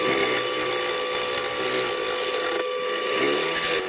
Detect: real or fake real